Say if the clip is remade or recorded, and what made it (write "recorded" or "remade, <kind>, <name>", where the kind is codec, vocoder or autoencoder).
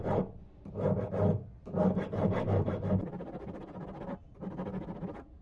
recorded